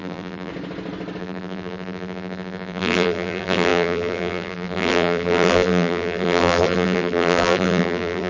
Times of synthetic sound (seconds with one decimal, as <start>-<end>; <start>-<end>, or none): 0.0-0.5; 1.2-8.3